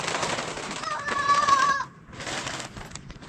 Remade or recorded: recorded